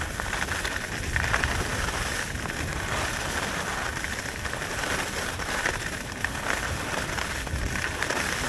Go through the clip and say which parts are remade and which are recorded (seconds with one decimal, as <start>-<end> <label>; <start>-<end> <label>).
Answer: 0.0-8.5 recorded